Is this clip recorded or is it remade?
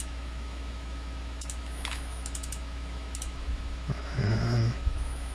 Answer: remade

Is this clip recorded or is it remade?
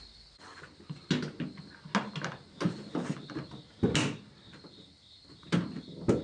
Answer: recorded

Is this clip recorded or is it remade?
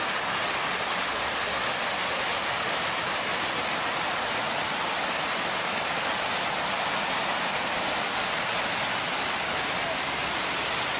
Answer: recorded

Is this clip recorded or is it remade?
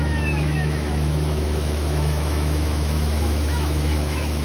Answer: remade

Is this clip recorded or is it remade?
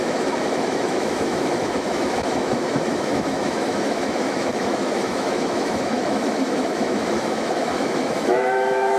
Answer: remade